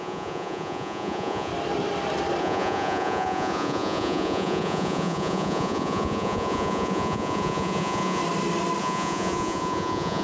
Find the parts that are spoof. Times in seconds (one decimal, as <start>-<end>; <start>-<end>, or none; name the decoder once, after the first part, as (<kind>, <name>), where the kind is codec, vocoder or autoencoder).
0.0-1.5 (vocoder, Vocos); 2.4-8.2; 8.8-10.2